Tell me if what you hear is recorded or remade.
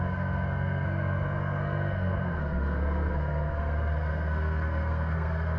remade